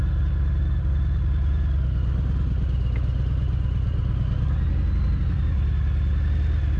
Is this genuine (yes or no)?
yes